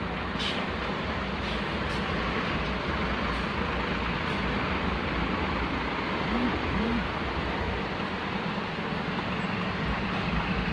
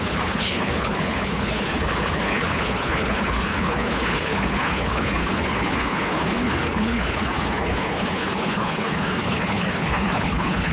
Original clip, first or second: first